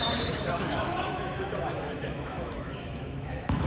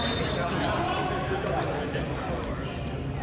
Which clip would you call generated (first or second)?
first